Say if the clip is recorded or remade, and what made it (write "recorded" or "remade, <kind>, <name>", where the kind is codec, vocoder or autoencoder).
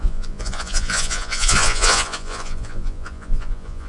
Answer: remade, vocoder, Vocos